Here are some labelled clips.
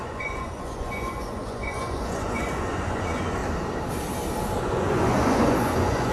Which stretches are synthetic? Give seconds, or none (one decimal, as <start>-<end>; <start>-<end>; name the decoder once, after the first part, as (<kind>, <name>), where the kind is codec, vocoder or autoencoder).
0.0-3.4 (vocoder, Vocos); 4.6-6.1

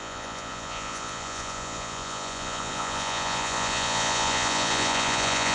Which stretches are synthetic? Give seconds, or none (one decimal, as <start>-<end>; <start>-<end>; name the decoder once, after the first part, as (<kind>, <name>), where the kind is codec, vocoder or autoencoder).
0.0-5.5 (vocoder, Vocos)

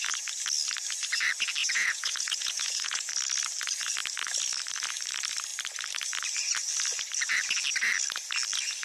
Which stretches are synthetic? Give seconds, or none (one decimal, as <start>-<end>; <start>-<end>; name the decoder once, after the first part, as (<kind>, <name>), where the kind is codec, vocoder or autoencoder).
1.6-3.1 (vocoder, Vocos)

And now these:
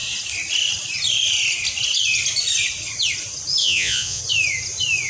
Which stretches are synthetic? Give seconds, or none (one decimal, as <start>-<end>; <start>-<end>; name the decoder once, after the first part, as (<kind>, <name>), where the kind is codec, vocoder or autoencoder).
3.6-4.2 (vocoder, Vocos)